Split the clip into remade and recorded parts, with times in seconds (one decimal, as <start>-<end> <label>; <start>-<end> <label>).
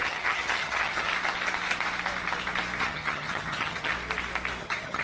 0.0-1.1 remade; 1.1-2.8 recorded; 2.8-3.9 remade; 3.9-4.6 recorded; 4.6-5.0 remade